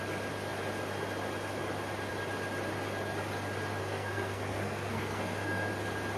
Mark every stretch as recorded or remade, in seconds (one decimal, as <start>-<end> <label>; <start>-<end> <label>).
0.0-3.8 recorded; 3.8-5.7 remade; 5.7-6.2 recorded